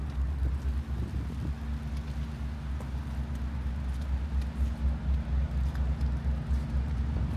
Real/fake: real